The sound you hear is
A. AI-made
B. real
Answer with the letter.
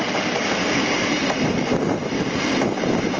B